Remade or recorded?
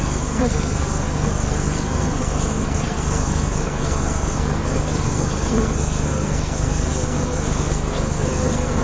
remade